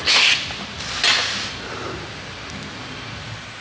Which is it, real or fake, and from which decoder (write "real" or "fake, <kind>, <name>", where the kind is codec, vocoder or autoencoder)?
real